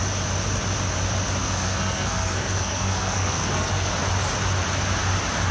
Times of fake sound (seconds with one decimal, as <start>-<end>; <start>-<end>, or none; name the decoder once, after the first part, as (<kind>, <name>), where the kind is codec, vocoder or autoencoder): 1.4-3.9 (codec, SNAC)